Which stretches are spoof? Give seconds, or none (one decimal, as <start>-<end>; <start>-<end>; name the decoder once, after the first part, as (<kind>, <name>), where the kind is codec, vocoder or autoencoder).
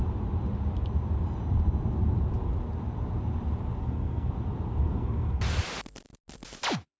3.8-4.3 (codec, SNAC); 4.8-5.4